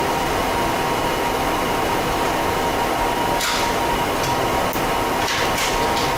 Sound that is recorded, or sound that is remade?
recorded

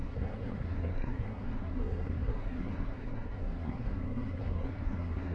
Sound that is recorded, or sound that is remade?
remade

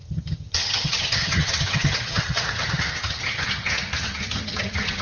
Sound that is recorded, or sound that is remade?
remade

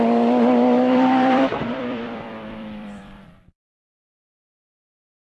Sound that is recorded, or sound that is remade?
remade